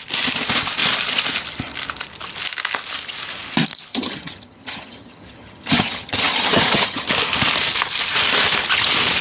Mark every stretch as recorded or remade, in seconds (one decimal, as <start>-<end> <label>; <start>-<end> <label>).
0.0-3.9 recorded; 3.9-7.1 remade; 7.1-9.2 recorded